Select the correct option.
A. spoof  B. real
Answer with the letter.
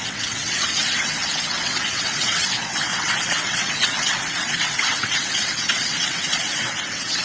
A